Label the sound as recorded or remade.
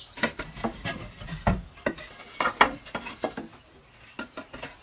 recorded